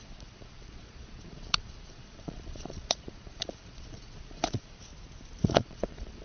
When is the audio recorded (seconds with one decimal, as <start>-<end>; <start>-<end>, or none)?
4.9-5.4